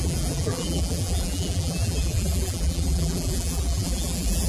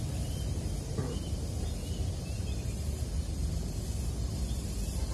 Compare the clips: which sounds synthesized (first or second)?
first